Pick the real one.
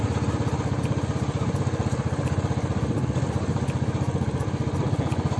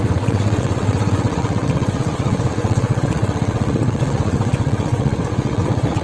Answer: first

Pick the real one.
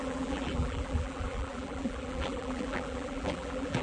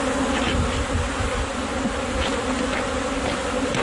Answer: second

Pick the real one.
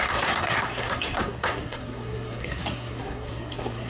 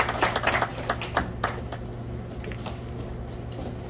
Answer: second